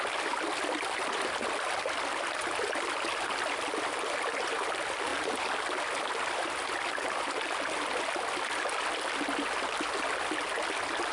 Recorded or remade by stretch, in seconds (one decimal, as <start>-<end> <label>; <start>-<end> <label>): 0.0-11.1 recorded